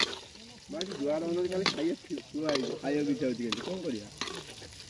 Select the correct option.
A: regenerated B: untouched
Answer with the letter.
B